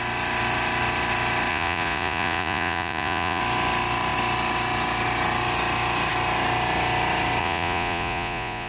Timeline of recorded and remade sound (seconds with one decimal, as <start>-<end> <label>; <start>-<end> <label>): 0.0-1.5 recorded; 1.5-3.4 remade; 3.4-7.4 recorded; 7.4-8.7 remade